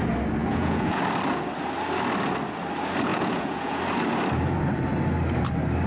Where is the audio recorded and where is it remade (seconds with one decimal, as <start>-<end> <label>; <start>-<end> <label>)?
0.0-0.4 recorded; 0.4-1.0 remade; 1.0-3.1 recorded; 3.1-3.8 remade; 3.8-5.9 recorded